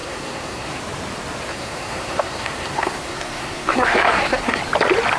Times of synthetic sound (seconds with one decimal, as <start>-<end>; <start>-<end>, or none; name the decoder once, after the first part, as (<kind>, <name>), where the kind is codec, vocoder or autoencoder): 0.0-0.8 (codec, SNAC); 1.5-4.6